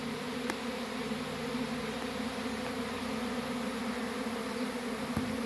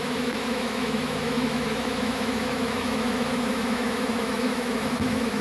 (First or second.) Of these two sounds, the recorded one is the first